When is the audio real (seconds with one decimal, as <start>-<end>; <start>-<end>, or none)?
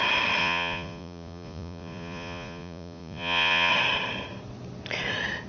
0.0-0.4; 3.7-5.5